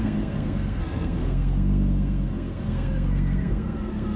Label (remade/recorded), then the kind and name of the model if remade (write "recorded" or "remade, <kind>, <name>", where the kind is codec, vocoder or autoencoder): remade, codec, SNAC